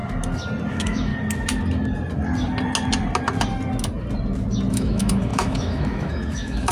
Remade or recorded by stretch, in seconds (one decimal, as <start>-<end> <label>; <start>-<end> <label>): 0.0-0.7 recorded; 0.7-1.1 remade; 1.1-4.7 recorded; 4.7-6.7 remade